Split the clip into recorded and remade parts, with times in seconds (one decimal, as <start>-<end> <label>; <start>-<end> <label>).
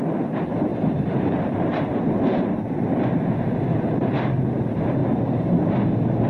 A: 0.0-0.7 recorded; 0.7-4.5 remade; 4.5-5.0 recorded; 5.0-5.7 remade; 5.7-6.3 recorded